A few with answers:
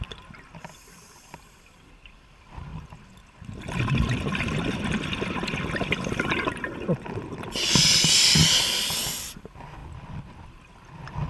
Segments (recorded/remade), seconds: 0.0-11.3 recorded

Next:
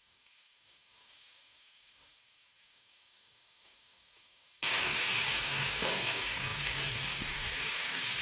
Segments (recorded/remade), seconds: 0.0-8.2 remade

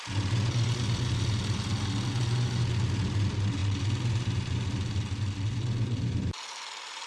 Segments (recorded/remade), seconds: 0.0-7.1 recorded

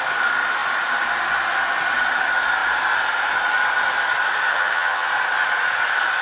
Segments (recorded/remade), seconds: 0.0-4.5 recorded; 4.5-5.1 remade; 5.1-6.2 recorded

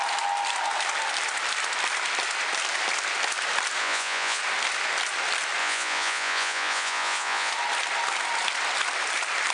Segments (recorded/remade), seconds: 0.0-3.8 recorded; 3.8-4.4 remade; 4.4-5.6 recorded; 5.6-7.5 remade; 7.5-9.5 recorded

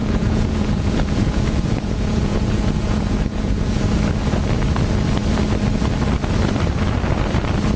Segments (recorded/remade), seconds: 0.0-4.0 remade; 4.0-7.8 recorded